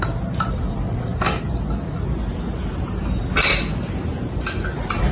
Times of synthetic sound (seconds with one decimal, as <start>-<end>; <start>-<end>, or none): none